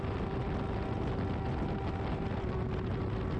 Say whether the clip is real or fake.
real